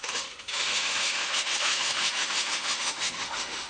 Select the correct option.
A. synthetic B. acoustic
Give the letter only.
A